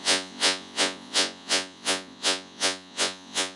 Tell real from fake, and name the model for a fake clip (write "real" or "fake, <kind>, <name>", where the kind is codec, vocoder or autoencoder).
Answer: fake, vocoder, Vocos